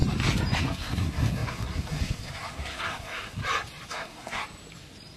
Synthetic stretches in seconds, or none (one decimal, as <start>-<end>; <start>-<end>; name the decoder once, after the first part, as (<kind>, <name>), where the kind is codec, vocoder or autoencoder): 0.6-3.4 (codec, SNAC); 3.9-4.4